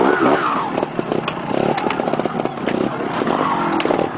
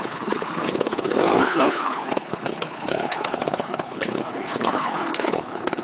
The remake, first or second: second